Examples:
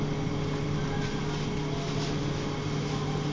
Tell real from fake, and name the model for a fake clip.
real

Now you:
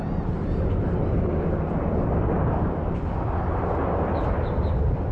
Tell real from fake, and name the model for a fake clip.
real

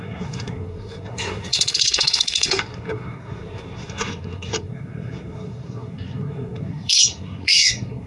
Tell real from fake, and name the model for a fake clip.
fake, codec, SNAC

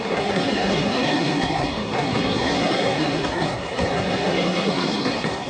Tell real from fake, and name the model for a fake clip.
fake, codec, SNAC